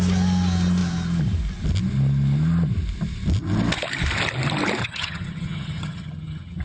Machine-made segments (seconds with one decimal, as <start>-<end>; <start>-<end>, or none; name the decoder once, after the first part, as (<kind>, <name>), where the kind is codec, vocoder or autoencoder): 4.8-6.6 (vocoder, HiFi-GAN)